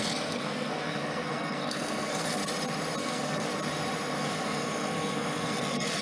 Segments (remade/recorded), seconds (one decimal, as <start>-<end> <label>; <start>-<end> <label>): 0.0-2.4 remade; 2.4-3.0 recorded; 3.0-3.5 remade; 3.5-4.2 recorded; 4.2-6.0 remade